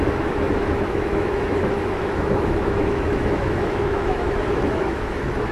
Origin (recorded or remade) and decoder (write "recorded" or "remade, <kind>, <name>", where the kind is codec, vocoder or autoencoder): remade, autoencoder, DAC-VAE